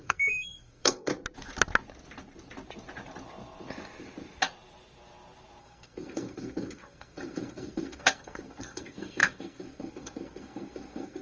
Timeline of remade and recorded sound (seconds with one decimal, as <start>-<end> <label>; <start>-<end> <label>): 0.0-1.1 remade; 1.1-5.6 recorded; 5.6-11.2 remade